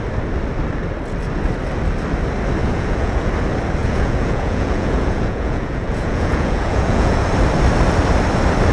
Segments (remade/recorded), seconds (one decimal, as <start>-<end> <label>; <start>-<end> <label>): 0.0-2.6 recorded; 2.6-3.3 remade; 3.3-3.8 recorded; 3.8-7.3 remade; 7.3-8.7 recorded